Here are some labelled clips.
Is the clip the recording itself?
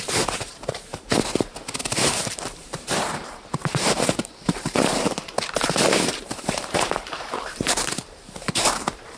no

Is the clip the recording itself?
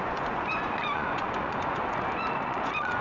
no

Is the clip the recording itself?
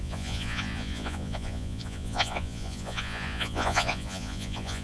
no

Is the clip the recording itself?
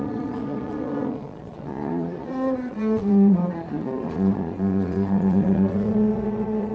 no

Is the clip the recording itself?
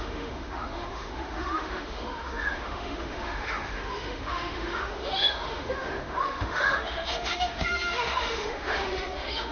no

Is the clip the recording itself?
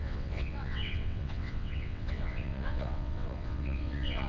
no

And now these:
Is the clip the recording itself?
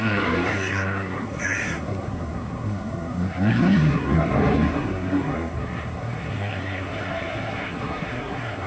no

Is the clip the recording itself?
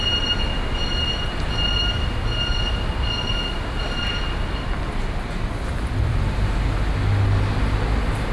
yes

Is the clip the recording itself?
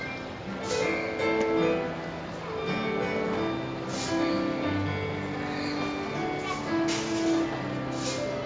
yes